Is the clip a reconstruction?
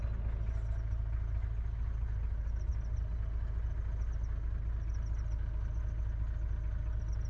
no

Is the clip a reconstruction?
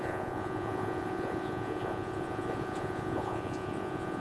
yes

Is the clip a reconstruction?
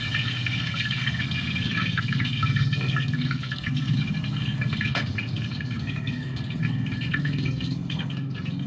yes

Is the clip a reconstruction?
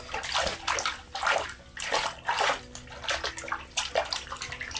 no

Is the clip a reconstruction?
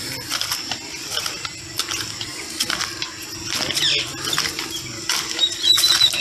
no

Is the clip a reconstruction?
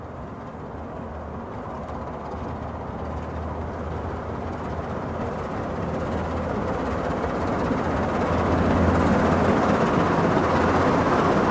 no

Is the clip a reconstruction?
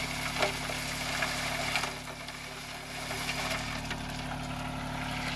no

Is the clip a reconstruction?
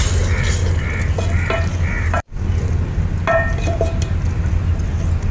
no